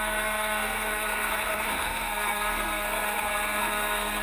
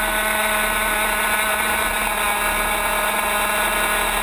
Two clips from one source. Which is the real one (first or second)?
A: second